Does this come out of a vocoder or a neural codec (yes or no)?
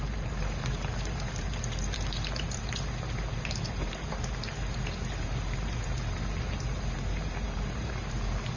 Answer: yes